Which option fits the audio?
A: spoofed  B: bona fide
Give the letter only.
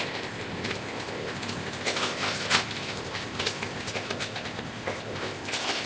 A